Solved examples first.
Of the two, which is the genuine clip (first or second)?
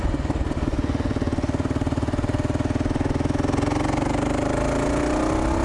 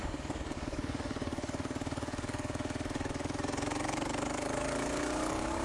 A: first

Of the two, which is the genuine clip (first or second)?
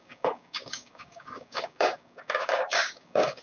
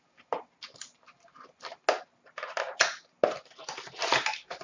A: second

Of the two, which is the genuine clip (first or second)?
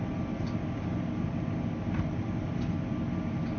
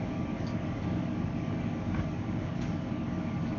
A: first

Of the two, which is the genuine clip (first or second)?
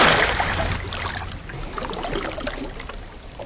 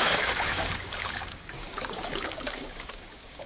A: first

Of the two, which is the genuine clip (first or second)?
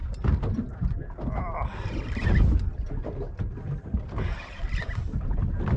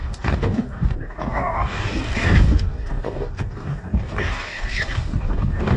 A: first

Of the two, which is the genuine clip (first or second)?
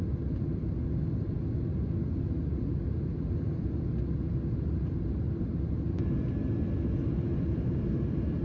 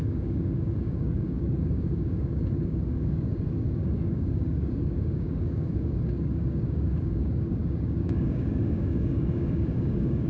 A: first